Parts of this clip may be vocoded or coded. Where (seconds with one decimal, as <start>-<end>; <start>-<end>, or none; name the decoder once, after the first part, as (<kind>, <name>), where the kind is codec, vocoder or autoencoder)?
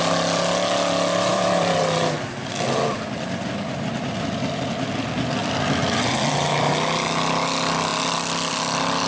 1.3-2.5 (vocoder, BigVGAN v2); 5.4-6.7